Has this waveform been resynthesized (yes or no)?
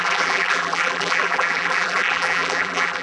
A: yes